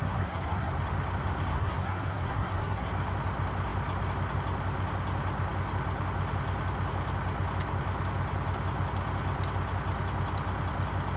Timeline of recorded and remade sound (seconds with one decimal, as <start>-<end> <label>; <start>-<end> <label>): 0.0-0.7 remade; 0.7-1.5 recorded; 1.5-2.9 remade; 2.9-11.2 recorded

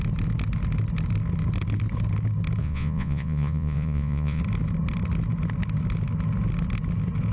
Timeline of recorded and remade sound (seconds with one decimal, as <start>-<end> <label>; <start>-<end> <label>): 0.0-2.6 recorded; 2.6-4.4 remade; 4.4-7.3 recorded

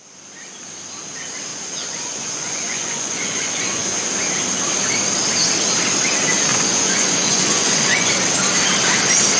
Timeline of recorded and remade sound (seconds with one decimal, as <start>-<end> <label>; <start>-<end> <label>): 0.0-1.5 recorded; 1.5-4.0 remade; 4.0-6.5 recorded; 6.5-8.1 remade; 8.1-9.4 recorded

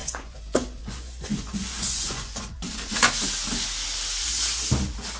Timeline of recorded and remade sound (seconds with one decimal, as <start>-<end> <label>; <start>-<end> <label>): 0.0-3.1 remade; 3.1-5.2 recorded